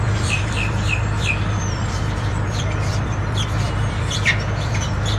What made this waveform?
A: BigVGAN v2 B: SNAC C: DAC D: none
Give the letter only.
A